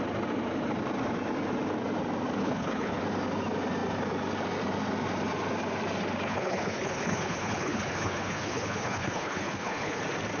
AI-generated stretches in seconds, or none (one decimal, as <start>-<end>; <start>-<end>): 2.4-3.0; 6.3-10.0

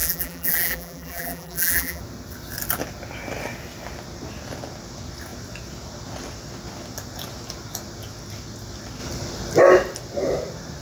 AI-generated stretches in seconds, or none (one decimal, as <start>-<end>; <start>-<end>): 0.0-2.0

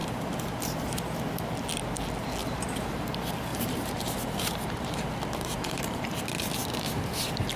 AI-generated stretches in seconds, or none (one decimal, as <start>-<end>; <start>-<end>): 0.0-1.2; 2.4-3.1; 3.5-6.2

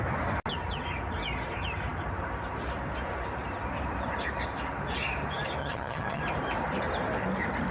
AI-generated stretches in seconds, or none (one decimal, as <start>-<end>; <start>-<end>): 5.6-6.2

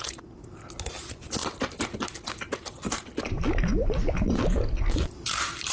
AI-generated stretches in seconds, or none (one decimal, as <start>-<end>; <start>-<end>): none

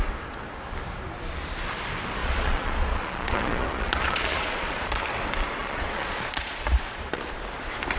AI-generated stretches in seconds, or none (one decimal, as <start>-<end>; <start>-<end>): 2.2-5.0; 5.6-6.5

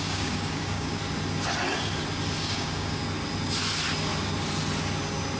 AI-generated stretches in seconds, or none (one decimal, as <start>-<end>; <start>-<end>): 0.0-1.0; 2.4-3.0

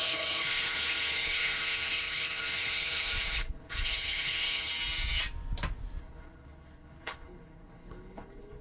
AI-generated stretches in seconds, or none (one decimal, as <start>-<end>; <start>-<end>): 0.0-4.7; 6.0-8.6